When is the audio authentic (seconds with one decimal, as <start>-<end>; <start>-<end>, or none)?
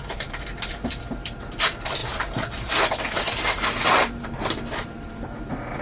none